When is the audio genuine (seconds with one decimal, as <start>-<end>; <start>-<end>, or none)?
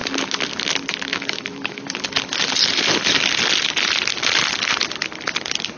0.0-1.1; 2.0-5.8